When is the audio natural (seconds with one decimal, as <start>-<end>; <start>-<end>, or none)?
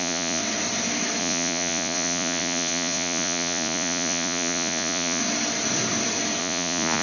0.4-1.2; 5.2-6.4